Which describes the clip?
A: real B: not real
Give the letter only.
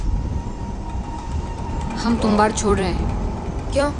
B